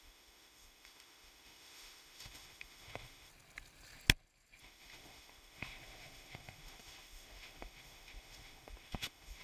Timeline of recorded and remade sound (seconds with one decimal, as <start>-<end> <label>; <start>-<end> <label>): 0.0-3.3 remade; 3.3-4.6 recorded; 4.6-9.4 remade